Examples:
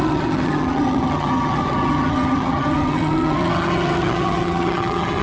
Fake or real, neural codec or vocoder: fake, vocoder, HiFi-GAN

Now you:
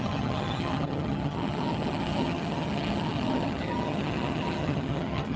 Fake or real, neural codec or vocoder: fake, vocoder, HiFi-GAN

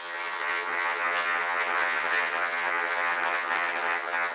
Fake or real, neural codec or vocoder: fake, vocoder, HiFi-GAN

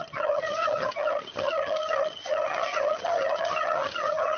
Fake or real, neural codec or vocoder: fake, vocoder, HiFi-GAN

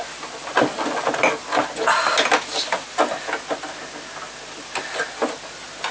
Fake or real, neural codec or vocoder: real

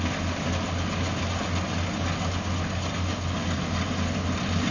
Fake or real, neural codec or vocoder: real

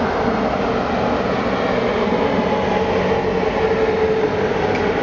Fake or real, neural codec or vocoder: real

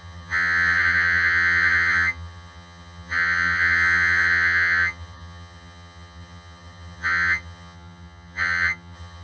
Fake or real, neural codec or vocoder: fake, vocoder, HiFi-GAN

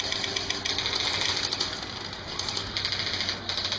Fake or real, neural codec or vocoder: real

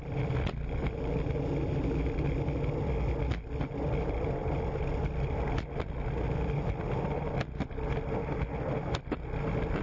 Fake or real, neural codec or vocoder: real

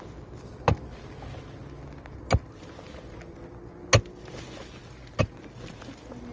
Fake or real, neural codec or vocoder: real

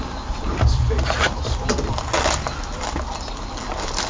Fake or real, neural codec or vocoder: real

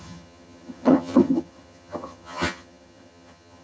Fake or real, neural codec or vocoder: fake, vocoder, HiFi-GAN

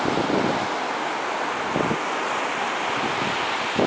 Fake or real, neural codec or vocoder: real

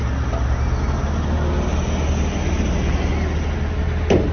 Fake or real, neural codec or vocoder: real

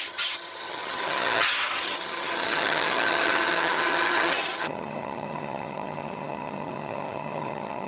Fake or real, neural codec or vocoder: fake, vocoder, HiFi-GAN